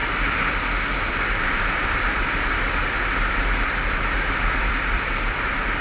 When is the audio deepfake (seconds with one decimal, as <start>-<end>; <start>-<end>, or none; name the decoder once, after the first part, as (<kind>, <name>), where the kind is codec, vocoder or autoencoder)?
1.3-5.8 (vocoder, BigVGAN v2)